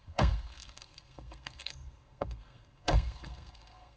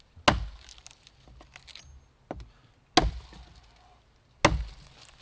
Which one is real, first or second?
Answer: second